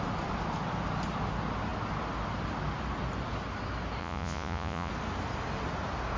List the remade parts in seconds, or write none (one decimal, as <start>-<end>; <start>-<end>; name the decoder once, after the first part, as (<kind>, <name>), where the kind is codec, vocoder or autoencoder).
4.0-4.9 (vocoder, Vocos)